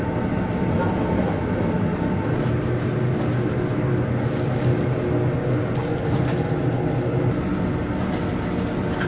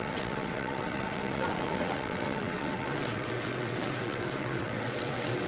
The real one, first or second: first